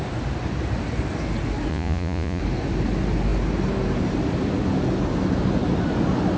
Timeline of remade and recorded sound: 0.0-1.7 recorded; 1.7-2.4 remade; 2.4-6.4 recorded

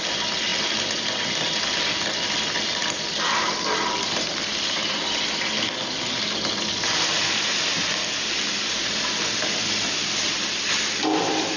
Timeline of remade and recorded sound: 0.0-11.6 recorded

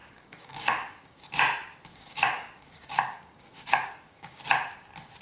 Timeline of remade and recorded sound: 0.0-1.2 remade; 1.2-1.9 recorded; 1.9-4.4 remade; 4.4-5.2 recorded

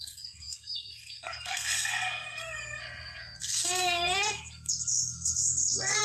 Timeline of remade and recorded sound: 0.0-6.0 remade